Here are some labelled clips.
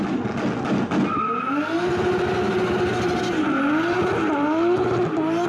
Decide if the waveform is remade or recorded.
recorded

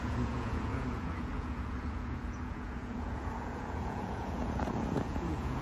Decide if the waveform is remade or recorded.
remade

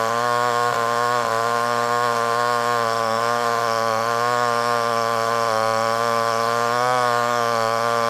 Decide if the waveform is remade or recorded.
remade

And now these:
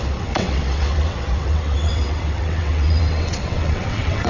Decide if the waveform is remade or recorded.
remade